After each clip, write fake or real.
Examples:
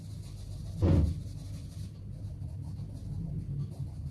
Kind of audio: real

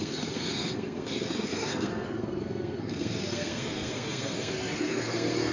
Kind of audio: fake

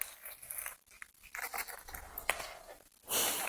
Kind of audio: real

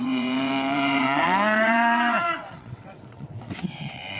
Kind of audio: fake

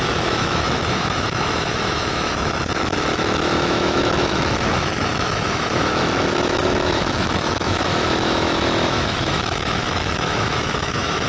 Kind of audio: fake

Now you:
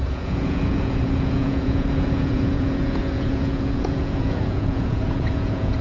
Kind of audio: fake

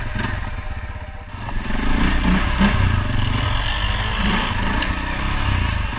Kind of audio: real